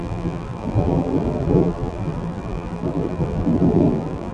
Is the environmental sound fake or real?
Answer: fake